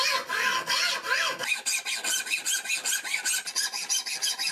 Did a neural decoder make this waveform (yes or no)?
no